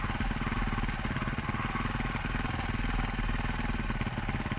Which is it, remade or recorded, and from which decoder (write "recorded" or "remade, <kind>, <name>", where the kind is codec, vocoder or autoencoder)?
recorded